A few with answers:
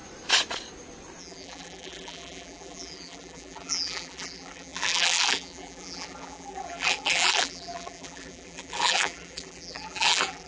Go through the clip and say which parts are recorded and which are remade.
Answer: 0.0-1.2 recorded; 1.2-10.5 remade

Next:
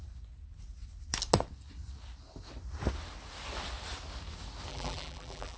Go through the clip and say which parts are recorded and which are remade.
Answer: 0.0-4.7 recorded; 4.7-5.6 remade

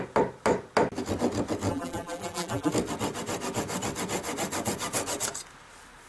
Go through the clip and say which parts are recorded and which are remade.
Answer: 0.0-1.7 recorded; 1.7-2.7 remade; 2.7-6.1 recorded

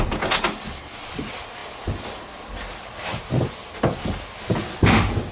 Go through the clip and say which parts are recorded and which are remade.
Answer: 0.0-5.3 recorded

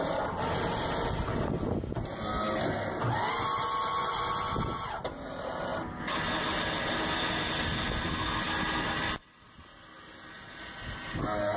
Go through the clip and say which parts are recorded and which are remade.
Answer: 0.0-11.6 recorded